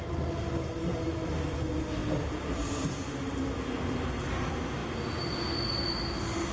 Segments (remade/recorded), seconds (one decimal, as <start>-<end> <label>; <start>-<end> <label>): 0.0-6.5 recorded